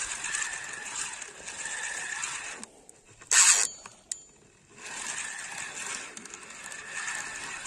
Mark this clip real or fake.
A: real